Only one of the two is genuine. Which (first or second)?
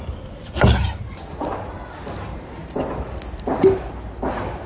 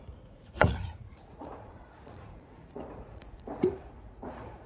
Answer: first